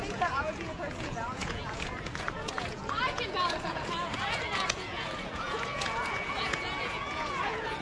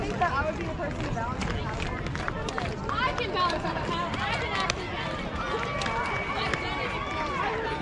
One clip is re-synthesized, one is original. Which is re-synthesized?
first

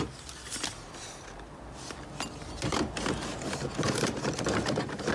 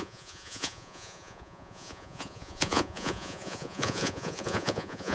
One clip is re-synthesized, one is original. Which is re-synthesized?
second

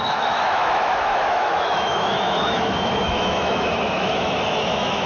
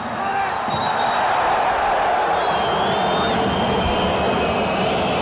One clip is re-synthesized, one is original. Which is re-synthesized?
first